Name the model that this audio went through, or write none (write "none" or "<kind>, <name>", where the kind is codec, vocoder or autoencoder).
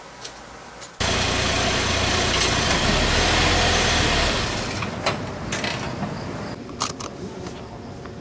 none